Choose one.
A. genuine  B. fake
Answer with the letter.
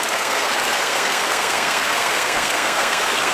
B